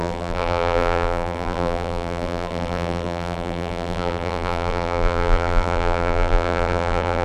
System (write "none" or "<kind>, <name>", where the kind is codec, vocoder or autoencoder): vocoder, BigVGAN v2